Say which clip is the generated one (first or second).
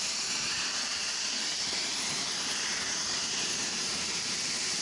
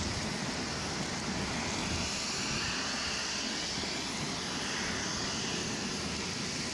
first